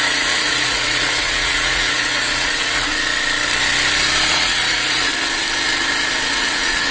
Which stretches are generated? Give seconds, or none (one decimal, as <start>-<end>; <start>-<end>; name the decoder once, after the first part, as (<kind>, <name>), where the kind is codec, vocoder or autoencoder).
0.0-2.9 (vocoder, Vocos); 4.3-5.1; 6.3-6.9